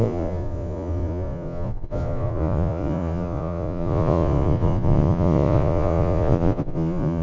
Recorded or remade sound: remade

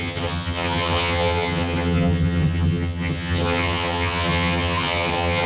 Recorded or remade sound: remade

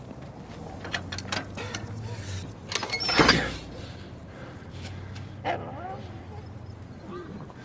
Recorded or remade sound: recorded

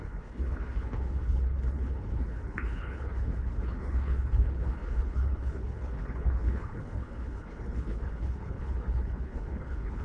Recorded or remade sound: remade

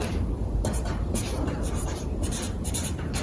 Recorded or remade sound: remade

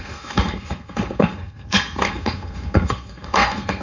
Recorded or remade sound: remade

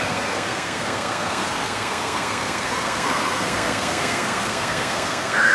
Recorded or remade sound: remade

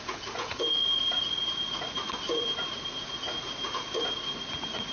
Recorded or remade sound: remade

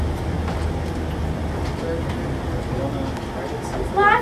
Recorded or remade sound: recorded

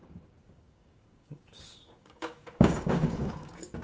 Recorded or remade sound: remade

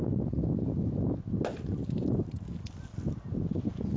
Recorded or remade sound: recorded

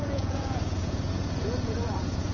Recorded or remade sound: remade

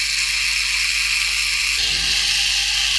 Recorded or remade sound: recorded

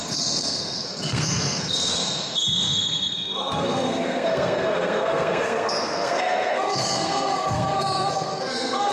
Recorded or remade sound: remade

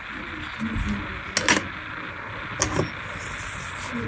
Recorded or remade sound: recorded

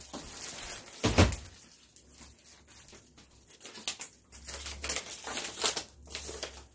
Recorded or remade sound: recorded